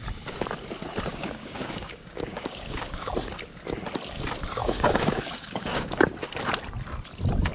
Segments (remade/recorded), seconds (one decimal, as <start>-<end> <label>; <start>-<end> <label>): 0.0-1.1 recorded; 1.1-3.1 remade; 3.1-4.6 recorded; 4.6-6.0 remade; 6.0-7.5 recorded

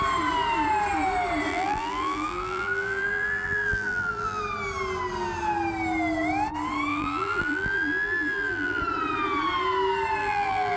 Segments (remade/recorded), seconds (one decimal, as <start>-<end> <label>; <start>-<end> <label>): 0.0-1.5 recorded; 1.5-4.4 remade; 4.4-6.9 recorded; 6.9-8.8 remade; 8.8-10.2 recorded; 10.2-10.8 remade

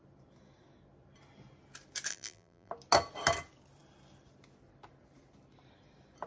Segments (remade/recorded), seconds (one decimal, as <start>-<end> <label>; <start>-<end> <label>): 0.0-2.1 recorded; 2.1-2.7 remade; 2.7-6.3 recorded

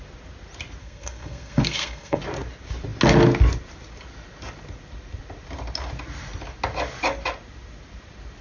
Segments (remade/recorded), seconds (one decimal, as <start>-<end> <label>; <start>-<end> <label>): 0.0-0.8 recorded; 0.8-2.2 remade; 2.2-8.4 recorded